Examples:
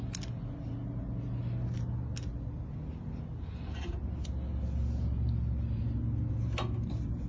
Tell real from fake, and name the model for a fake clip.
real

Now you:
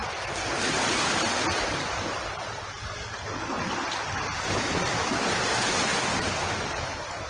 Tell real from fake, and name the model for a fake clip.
real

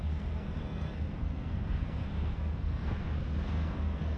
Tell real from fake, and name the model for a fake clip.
fake, codec, SNAC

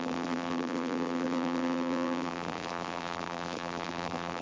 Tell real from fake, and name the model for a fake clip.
fake, vocoder, BigVGAN v2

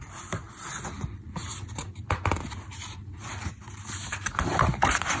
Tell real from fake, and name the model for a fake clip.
real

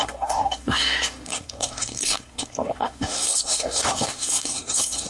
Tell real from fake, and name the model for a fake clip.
fake, codec, SNAC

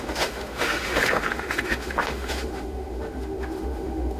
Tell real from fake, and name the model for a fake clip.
fake, autoencoder, DAC-VAE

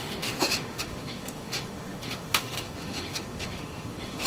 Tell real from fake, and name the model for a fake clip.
fake, autoencoder, DAC-VAE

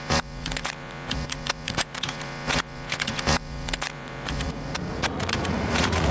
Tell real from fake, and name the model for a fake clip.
fake, vocoder, Vocos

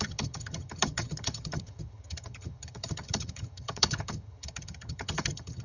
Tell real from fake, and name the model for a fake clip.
fake, vocoder, HiFi-GAN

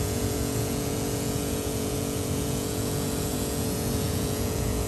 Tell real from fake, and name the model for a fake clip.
fake, vocoder, Vocos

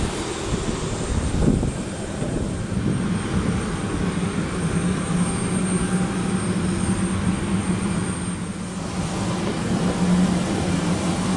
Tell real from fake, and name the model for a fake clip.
real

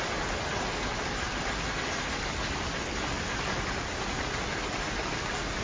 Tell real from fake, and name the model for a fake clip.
real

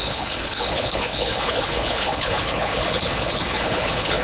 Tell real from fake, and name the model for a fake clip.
fake, codec, HILCodec